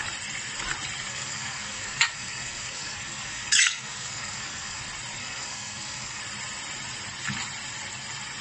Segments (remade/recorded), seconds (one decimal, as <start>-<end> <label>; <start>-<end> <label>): 0.0-1.1 recorded; 1.1-4.8 remade; 4.8-5.2 recorded; 5.2-6.2 remade; 6.2-8.4 recorded